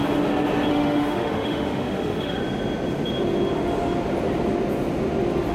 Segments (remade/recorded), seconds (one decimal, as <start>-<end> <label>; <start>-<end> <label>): 0.0-0.7 recorded; 0.7-2.4 remade; 2.4-5.5 recorded